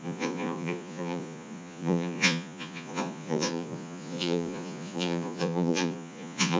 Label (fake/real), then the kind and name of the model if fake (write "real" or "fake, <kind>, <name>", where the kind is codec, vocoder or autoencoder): fake, vocoder, Vocos